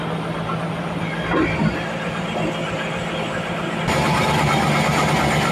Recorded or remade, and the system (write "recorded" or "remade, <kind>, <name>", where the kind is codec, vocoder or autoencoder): recorded